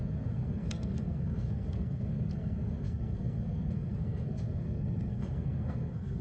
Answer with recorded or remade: remade